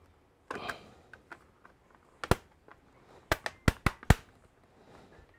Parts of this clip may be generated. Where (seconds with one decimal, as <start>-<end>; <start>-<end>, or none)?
none